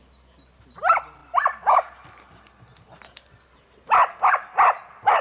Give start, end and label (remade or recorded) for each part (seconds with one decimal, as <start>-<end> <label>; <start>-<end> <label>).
0.0-5.2 recorded